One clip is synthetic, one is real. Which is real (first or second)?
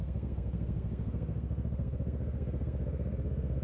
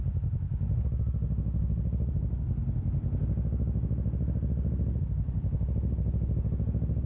second